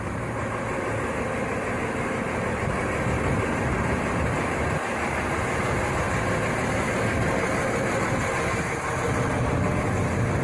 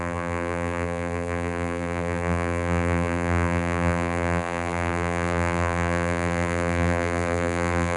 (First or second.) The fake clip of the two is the second